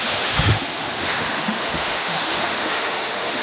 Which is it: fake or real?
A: fake